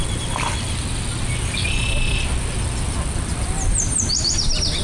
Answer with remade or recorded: recorded